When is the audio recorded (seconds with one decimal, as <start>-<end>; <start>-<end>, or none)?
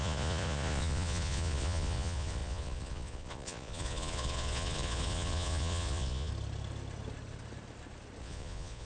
6.3-8.2